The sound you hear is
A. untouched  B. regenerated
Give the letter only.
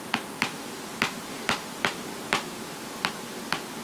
A